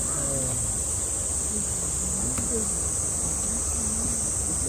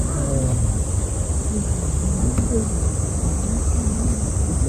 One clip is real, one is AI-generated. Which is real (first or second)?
first